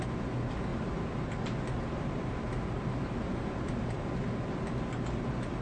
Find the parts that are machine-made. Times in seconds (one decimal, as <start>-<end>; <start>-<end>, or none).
0.7-4.0